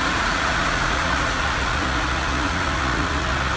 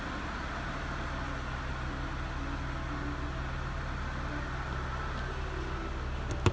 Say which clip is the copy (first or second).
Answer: first